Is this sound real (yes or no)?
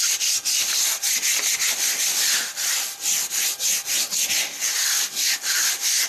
yes